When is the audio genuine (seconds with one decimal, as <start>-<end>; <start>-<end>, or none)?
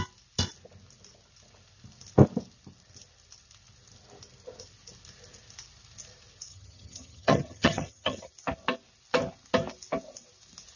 0.0-6.5; 8.3-10.8